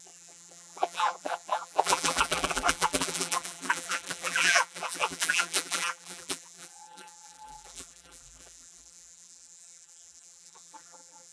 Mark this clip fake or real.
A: fake